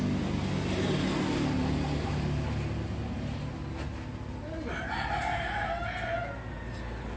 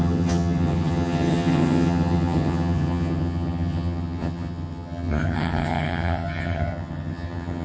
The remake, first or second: second